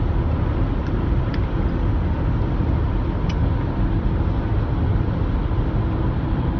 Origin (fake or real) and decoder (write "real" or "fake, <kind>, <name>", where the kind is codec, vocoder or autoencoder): real